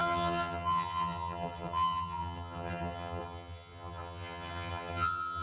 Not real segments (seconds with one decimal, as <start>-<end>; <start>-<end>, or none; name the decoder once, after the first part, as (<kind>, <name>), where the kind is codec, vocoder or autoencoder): 0.0-5.4 (vocoder, HiFi-GAN)

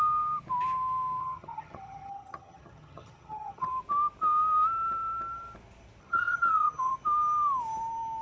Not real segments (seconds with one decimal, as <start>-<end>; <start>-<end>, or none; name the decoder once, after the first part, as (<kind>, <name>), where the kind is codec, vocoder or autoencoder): 1.2-3.7 (vocoder, HiFi-GAN); 6.0-6.9

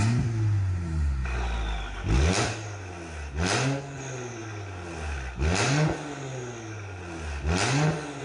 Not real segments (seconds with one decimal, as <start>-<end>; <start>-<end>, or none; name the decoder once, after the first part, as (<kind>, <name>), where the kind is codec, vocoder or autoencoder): none

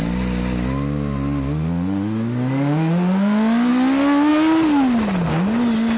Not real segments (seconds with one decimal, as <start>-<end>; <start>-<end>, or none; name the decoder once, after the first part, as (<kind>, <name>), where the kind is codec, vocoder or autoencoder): none